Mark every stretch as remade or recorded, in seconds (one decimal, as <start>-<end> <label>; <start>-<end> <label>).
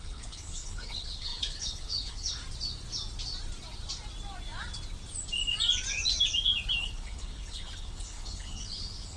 0.0-2.4 remade; 2.4-6.8 recorded; 6.8-9.2 remade